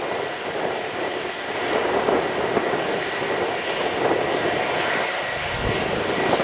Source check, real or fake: real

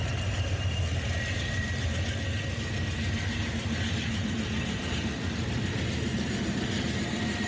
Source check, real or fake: fake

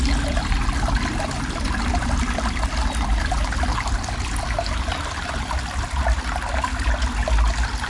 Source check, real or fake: real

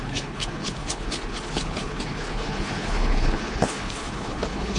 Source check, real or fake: fake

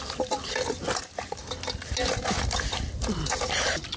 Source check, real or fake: real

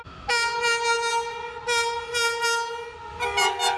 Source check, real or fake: real